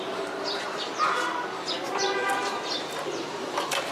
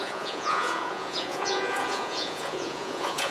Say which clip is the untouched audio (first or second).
first